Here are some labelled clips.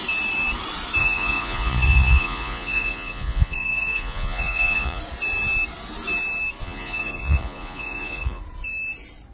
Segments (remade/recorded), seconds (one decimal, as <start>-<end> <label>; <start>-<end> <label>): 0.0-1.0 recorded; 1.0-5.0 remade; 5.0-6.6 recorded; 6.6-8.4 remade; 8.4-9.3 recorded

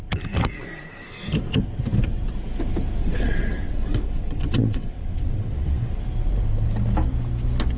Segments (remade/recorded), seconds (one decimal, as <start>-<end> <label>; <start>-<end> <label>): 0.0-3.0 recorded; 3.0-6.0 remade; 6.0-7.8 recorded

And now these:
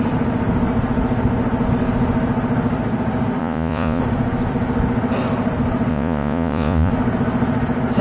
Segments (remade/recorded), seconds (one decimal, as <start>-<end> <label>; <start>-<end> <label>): 0.0-3.4 recorded; 3.4-4.0 remade; 4.0-5.9 recorded; 5.9-6.9 remade; 6.9-8.0 recorded

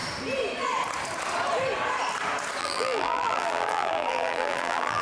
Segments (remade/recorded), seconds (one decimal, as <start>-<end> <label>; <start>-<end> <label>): 0.0-2.6 recorded; 2.6-5.0 remade

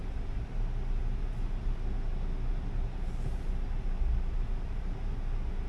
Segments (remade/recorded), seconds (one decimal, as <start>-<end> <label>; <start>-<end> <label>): 0.0-5.7 recorded

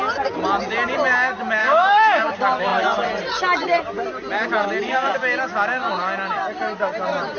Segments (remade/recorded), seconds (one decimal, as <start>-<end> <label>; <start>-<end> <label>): 0.0-1.6 recorded; 1.6-2.3 remade; 2.3-7.4 recorded

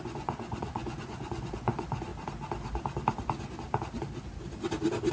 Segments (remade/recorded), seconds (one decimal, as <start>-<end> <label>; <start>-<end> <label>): 0.0-2.1 remade; 2.1-5.1 recorded

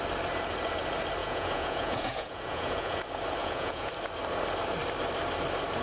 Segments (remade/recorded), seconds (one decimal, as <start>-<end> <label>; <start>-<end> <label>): 0.0-1.2 recorded; 1.2-3.0 remade; 3.0-3.4 recorded; 3.4-3.9 remade; 3.9-5.8 recorded